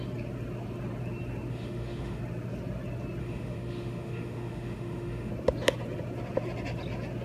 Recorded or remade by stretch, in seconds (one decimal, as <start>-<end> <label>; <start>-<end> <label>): 0.0-1.5 recorded; 1.5-2.2 remade; 2.2-3.2 recorded; 3.2-5.3 remade; 5.3-7.2 recorded